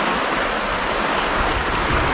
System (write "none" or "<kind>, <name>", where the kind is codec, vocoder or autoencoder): none